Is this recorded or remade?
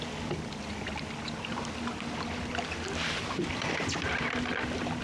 remade